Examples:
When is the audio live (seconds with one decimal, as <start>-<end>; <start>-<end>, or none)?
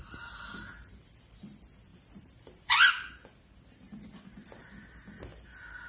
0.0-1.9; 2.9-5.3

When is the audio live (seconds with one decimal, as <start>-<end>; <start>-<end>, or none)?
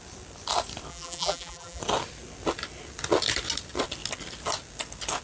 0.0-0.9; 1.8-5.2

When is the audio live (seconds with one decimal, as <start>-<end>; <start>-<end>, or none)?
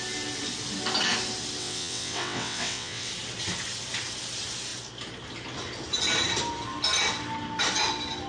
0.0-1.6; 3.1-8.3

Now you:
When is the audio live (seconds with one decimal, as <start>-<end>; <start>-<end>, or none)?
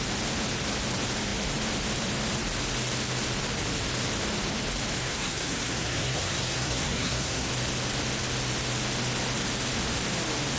0.0-5.0; 7.5-10.6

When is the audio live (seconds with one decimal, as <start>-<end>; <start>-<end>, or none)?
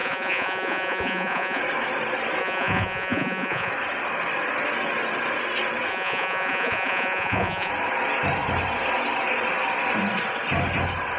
1.6-2.4; 3.7-5.9; 7.7-11.2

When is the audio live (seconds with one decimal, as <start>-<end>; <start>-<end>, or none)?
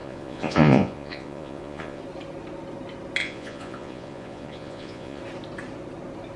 2.0-3.2; 5.2-6.4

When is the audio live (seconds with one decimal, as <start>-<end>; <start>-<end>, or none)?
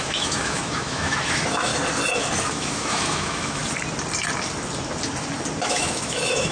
1.7-2.5; 3.6-5.6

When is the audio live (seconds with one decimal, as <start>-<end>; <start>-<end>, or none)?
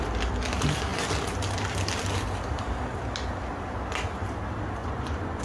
0.0-4.8